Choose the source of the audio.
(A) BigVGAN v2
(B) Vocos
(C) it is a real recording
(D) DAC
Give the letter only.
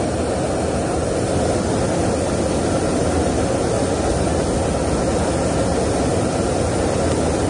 C